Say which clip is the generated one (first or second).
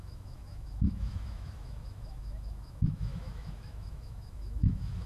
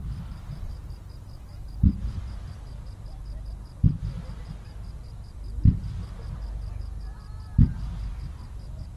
first